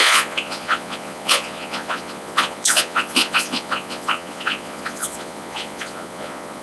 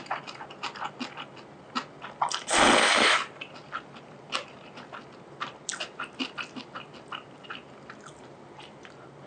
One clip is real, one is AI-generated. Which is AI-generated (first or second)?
first